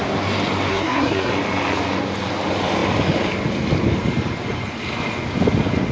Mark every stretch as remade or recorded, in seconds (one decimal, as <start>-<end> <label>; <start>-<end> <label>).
0.0-0.7 recorded; 0.7-1.3 remade; 1.3-5.9 recorded